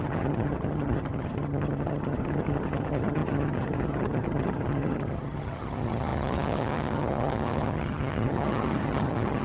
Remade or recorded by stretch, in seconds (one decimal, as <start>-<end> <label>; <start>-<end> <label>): 0.0-9.4 remade